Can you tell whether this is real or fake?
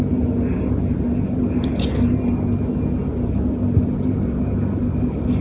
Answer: real